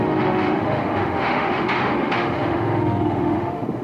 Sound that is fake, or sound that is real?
fake